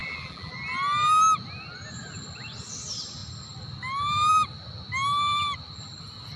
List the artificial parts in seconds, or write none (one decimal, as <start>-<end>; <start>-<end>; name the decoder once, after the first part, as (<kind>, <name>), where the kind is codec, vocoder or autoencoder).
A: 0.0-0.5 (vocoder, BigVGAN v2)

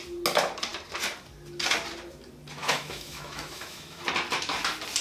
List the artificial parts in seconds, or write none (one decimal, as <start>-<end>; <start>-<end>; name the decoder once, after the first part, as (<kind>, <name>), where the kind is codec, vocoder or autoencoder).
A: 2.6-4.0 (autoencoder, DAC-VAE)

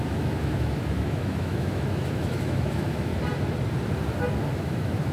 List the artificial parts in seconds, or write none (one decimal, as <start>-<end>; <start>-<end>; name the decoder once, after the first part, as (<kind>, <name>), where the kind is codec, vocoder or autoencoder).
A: 0.0-3.1 (autoencoder, DAC-VAE); 4.5-5.1

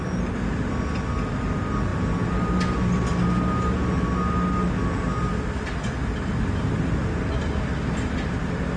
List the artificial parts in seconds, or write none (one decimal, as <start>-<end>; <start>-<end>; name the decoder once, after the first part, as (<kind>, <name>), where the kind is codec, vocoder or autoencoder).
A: none

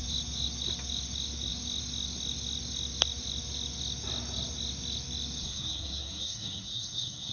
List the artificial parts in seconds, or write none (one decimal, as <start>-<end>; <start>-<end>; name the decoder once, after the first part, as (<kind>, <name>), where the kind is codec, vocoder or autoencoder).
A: 5.4-7.3 (codec, SNAC)